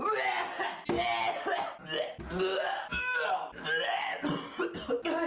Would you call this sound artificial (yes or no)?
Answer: no